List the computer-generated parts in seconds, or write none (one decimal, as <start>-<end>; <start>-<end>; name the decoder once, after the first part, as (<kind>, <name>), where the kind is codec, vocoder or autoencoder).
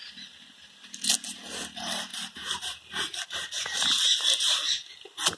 0.0-0.7 (vocoder, BigVGAN v2); 2.1-5.4